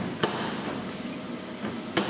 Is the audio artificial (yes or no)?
no